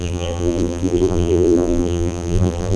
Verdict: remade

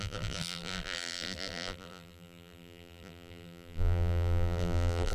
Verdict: remade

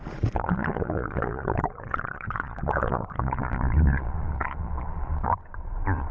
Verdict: remade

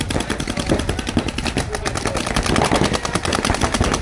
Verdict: recorded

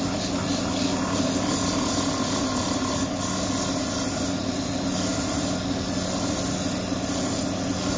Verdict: recorded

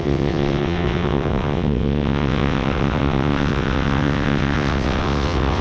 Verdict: remade